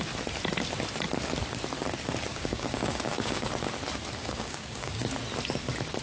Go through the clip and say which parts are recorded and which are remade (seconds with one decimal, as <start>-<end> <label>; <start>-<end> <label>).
0.0-2.3 recorded; 2.3-3.5 remade; 3.5-4.2 recorded; 4.2-5.1 remade; 5.1-6.0 recorded